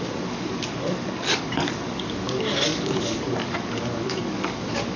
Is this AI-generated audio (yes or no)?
yes